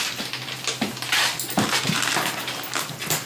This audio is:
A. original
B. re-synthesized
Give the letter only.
A